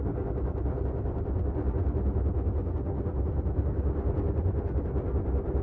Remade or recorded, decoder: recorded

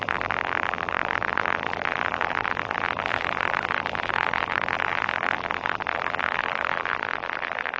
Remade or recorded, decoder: remade, vocoder, BigVGAN v2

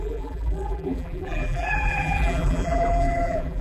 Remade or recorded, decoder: remade, vocoder, BigVGAN v2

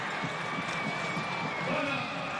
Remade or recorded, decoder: recorded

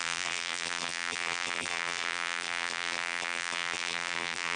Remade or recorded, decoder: remade, vocoder, BigVGAN v2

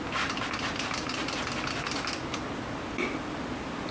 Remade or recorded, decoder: recorded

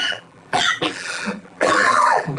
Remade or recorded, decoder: remade, vocoder, BigVGAN v2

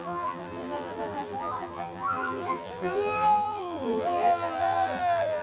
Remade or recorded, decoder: remade, vocoder, BigVGAN v2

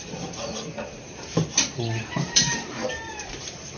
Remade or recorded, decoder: remade, vocoder, BigVGAN v2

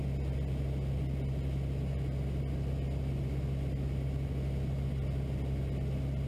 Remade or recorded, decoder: recorded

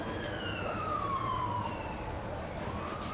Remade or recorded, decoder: remade, vocoder, BigVGAN v2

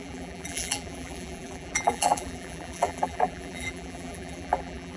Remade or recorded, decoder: remade, vocoder, BigVGAN v2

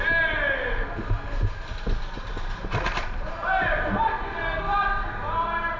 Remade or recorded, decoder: recorded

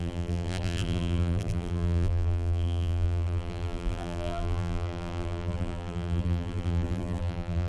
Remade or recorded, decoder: remade, vocoder, BigVGAN v2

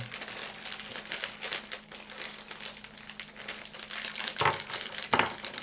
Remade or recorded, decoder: recorded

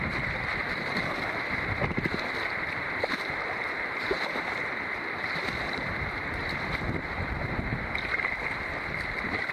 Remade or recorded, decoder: remade, vocoder, BigVGAN v2